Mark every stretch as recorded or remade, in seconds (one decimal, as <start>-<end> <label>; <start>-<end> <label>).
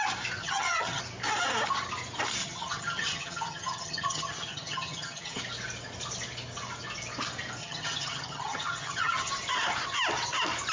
0.0-0.4 recorded; 0.4-1.0 remade; 1.0-2.4 recorded; 2.4-5.4 remade; 5.4-7.6 recorded; 7.6-9.3 remade; 9.3-10.7 recorded